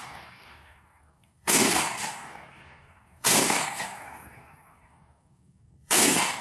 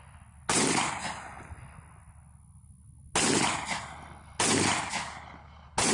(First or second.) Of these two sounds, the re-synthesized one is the first